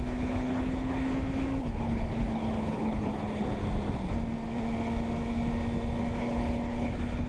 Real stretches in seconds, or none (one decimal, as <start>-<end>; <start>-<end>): 1.1-1.6; 3.6-6.2